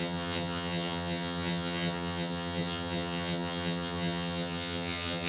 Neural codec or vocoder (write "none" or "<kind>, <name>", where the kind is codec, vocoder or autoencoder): vocoder, HiFi-GAN